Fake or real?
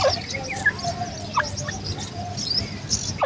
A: real